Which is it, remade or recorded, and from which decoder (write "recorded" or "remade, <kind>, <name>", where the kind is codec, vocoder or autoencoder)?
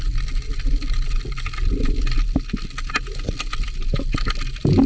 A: recorded